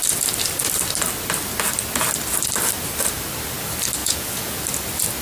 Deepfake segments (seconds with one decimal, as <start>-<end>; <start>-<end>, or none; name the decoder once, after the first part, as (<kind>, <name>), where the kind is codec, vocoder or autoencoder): 4.0-4.6 (vocoder, Vocos)